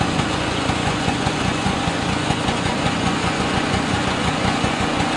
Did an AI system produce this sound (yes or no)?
yes